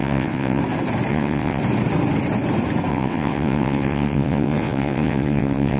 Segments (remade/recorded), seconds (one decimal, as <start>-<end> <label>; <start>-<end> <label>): 0.0-0.6 remade; 0.6-1.1 recorded; 1.1-1.6 remade; 1.6-2.9 recorded; 2.9-5.8 remade

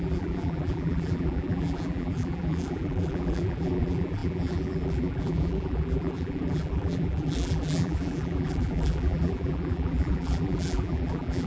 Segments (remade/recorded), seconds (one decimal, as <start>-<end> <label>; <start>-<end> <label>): 0.0-11.5 remade

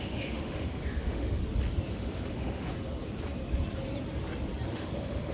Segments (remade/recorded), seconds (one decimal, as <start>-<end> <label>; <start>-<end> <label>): 0.0-1.4 remade; 1.4-1.9 recorded; 1.9-2.7 remade; 2.7-4.7 recorded; 4.7-5.3 remade